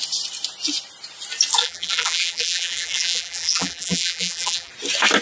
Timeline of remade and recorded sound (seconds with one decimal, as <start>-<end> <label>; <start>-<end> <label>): 0.0-1.6 recorded; 1.6-4.7 remade; 4.7-5.2 recorded